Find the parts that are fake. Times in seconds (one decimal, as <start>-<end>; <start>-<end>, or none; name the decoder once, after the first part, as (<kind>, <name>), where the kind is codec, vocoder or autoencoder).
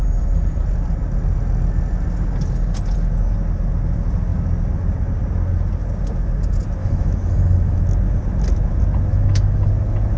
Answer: 6.8-7.8 (autoencoder, DAC-VAE); 9.1-9.7